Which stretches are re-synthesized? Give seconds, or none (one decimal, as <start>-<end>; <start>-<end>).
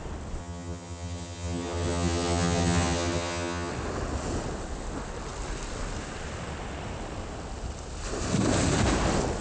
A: 0.4-3.7